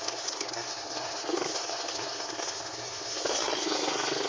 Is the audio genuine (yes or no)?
no